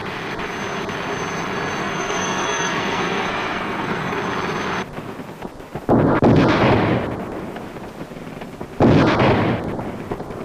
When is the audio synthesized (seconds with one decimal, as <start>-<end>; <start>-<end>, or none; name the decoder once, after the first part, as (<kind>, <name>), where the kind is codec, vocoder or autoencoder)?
1.8-4.2 (codec, SNAC)